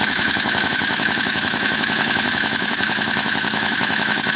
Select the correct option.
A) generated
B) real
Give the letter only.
A